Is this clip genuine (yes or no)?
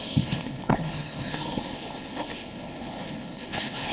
no